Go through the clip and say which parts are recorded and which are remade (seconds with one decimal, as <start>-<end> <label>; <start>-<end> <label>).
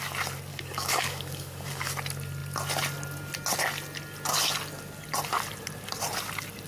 0.0-0.5 recorded; 0.5-1.9 remade; 1.9-6.7 recorded